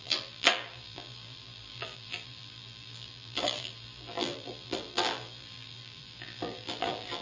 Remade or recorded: remade